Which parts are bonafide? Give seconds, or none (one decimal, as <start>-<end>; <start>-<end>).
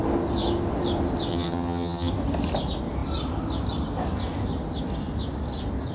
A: 0.0-1.3; 2.1-5.9